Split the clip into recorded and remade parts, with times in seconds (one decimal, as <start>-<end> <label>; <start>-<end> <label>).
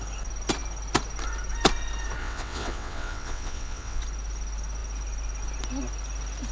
0.0-2.2 recorded; 2.2-4.0 remade; 4.0-6.5 recorded